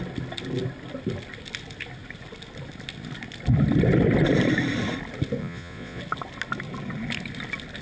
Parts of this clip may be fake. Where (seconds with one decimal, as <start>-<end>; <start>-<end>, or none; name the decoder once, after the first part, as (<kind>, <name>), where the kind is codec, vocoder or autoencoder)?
5.4-6.0 (vocoder, Vocos)